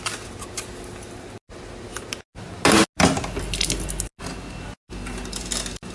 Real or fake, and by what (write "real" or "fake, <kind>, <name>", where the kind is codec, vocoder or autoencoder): real